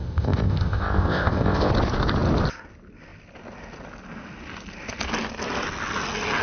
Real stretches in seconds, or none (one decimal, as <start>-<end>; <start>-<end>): 1.7-6.4